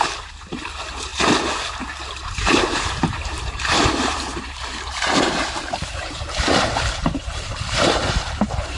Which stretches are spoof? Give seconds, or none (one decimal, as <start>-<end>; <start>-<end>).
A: 0.0-1.1; 2.1-8.8